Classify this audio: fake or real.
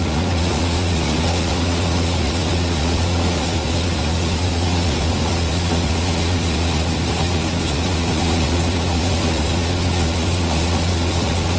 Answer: fake